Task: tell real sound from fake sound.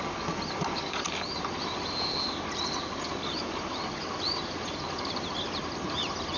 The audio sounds fake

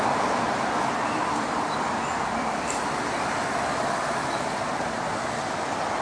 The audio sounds real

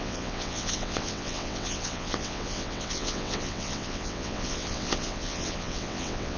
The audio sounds fake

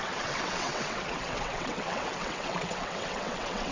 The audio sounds fake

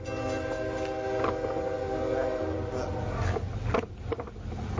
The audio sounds real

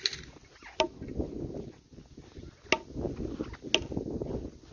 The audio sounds real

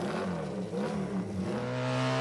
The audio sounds real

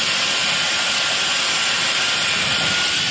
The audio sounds real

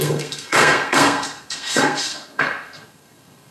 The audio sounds fake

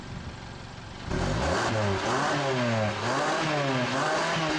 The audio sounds real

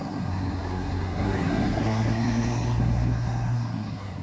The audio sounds fake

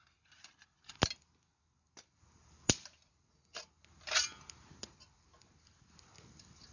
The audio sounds real